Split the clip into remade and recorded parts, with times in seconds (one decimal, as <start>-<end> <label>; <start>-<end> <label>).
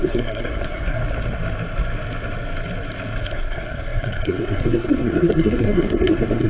0.0-1.0 remade; 1.0-3.2 recorded; 3.2-6.5 remade